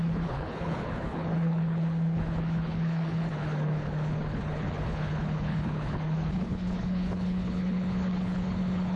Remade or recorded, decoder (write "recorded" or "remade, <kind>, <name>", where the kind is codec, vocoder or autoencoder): remade, codec, HILCodec